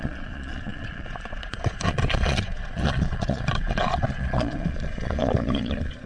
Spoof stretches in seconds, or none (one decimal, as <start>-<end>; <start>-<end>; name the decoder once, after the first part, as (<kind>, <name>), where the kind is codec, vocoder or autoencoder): 0.0-6.1 (vocoder, Vocos)